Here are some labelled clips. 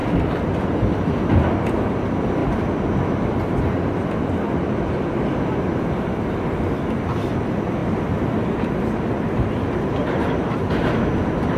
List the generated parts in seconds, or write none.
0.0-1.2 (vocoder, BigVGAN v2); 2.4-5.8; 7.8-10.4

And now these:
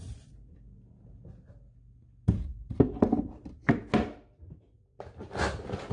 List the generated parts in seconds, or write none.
2.5-3.4 (vocoder, BigVGAN v2)

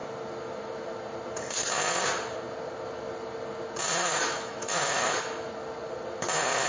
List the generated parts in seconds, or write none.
4.0-5.5 (autoencoder, DAC-VAE)

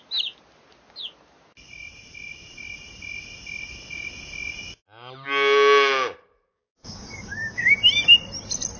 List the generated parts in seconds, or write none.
6.5-7.8 (codec, DAC)